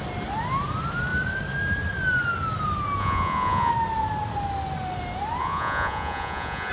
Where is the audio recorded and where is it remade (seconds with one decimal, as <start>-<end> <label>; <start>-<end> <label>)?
0.0-3.0 recorded; 3.0-3.7 remade; 3.7-5.4 recorded; 5.4-6.7 remade

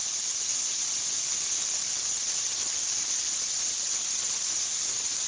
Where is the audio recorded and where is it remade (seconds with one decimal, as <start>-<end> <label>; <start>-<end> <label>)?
0.0-1.0 remade; 1.0-1.8 recorded; 1.8-4.5 remade; 4.5-5.3 recorded

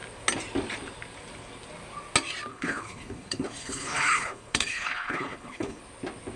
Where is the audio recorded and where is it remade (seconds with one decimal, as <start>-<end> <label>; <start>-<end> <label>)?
0.0-2.5 recorded; 2.5-5.8 remade; 5.8-6.4 recorded

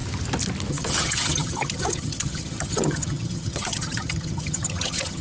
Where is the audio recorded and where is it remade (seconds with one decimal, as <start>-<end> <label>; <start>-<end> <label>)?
0.0-0.7 recorded; 0.7-5.2 remade